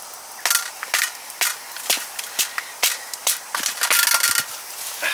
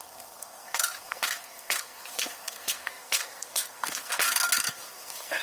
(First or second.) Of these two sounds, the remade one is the second